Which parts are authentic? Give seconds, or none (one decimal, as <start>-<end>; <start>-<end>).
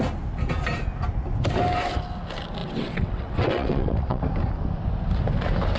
0.0-2.6; 4.2-5.8